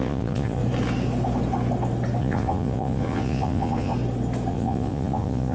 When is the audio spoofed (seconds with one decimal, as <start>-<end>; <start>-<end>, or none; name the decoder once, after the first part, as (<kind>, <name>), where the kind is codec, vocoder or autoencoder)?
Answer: 0.0-0.6 (vocoder, Vocos); 2.2-3.9; 4.5-5.5

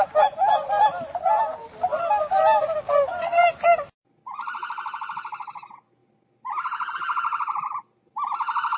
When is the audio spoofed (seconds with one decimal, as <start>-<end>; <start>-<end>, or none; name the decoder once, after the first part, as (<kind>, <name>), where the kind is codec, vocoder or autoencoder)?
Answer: none

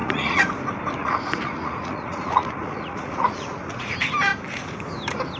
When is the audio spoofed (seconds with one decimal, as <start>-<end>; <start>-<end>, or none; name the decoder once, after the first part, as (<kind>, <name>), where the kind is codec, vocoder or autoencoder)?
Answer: 0.0-0.5 (vocoder, Vocos); 1.0-3.9

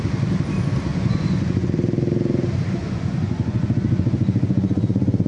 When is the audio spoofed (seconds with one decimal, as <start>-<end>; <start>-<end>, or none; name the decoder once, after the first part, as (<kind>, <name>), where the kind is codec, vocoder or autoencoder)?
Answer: 0.9-1.7 (vocoder, Vocos); 2.8-5.3

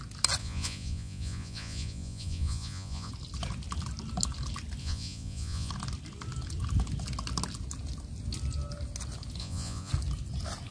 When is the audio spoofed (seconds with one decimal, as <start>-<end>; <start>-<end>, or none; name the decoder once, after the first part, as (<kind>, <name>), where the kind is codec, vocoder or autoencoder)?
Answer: 0.4-3.1 (vocoder, Vocos); 4.8-5.7; 9.4-9.9

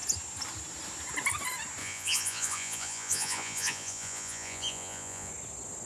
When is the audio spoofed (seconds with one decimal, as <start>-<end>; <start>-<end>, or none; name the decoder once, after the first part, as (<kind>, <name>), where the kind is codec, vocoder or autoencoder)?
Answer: 1.8-5.3 (vocoder, Vocos)

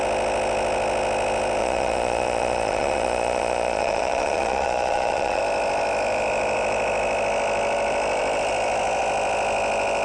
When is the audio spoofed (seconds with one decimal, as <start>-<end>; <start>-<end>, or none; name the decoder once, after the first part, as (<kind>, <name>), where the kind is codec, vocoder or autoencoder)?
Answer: 1.6-5.4 (vocoder, Vocos)

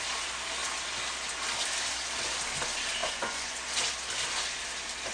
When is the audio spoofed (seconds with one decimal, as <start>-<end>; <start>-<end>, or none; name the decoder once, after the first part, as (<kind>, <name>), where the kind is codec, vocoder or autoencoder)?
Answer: 3.0-3.6 (vocoder, Vocos)